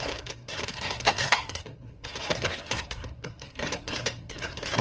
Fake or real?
fake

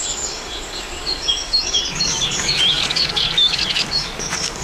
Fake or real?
fake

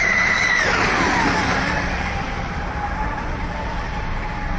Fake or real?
fake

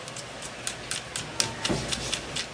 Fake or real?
real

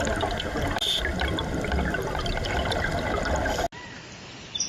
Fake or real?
real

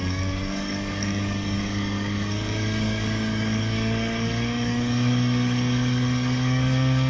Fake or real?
fake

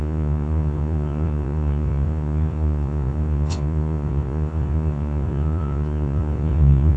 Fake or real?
fake